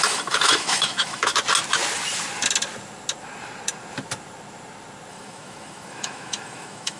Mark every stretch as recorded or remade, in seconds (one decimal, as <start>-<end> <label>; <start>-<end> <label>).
0.0-1.3 remade; 1.3-5.1 recorded; 5.1-7.0 remade

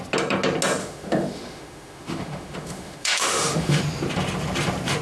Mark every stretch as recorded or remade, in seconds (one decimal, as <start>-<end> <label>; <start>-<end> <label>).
0.0-0.8 recorded; 0.8-3.8 remade; 3.8-5.0 recorded

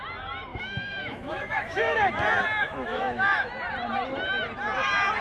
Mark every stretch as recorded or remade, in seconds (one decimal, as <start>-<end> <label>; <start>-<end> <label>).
0.0-0.5 recorded; 0.5-2.1 remade; 2.1-2.6 recorded; 2.6-3.5 remade; 3.5-5.2 recorded

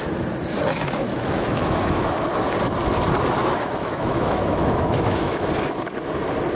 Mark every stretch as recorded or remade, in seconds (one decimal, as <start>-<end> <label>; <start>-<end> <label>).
0.0-1.1 recorded; 1.1-2.1 remade; 2.1-3.4 recorded; 3.4-5.5 remade; 5.5-6.5 recorded